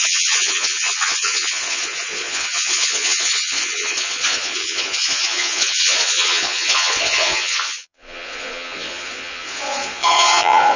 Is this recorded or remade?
remade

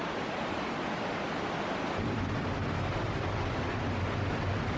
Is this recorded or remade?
recorded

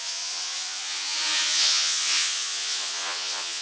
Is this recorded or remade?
remade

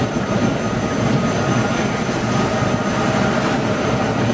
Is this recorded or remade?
recorded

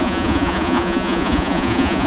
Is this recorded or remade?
remade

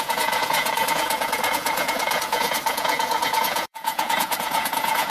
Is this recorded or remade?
remade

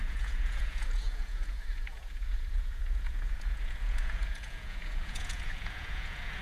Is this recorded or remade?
remade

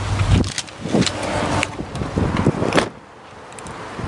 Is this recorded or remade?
recorded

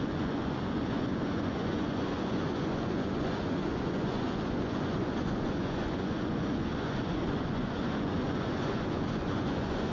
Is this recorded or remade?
remade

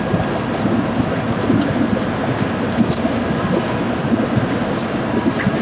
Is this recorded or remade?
recorded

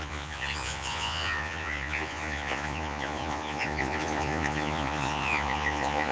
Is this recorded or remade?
remade